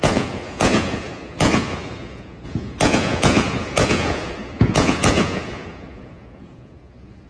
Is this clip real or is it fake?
fake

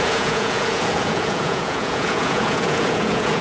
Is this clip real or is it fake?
fake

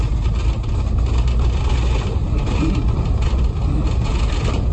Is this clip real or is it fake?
real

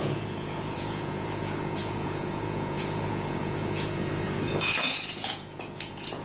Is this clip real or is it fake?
fake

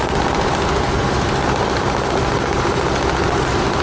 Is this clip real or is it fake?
real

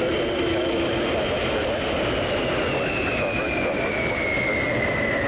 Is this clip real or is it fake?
real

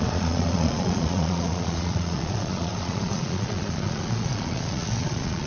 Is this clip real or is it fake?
fake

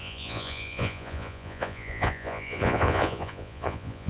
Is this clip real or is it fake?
fake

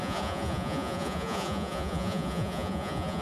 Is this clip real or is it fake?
fake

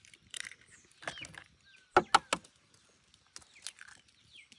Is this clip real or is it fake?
real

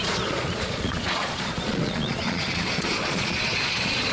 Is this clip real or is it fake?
fake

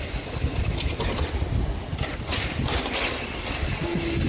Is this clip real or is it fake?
real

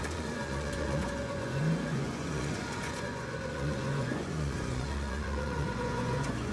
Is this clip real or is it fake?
fake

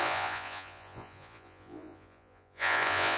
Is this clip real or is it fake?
fake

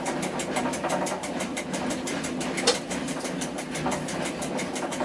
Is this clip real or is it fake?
real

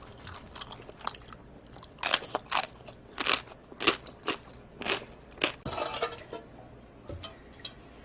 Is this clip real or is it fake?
real